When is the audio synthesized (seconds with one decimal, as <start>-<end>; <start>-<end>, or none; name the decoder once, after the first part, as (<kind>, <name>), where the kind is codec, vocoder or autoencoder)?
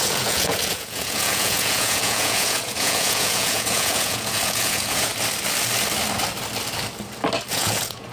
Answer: 0.0-5.1 (vocoder, Vocos); 7.5-8.1